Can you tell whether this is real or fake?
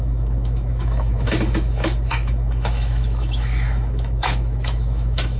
fake